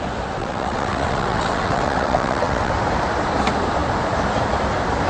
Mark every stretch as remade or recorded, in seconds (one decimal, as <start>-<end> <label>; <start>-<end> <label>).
0.0-0.4 recorded; 0.4-2.7 remade; 2.7-5.1 recorded